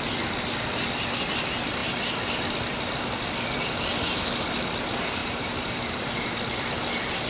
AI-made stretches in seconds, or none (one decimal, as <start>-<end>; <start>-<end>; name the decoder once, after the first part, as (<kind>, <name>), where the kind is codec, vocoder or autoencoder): 5.2-6.4 (vocoder, BigVGAN v2)